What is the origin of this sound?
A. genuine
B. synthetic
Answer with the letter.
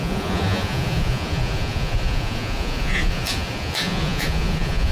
B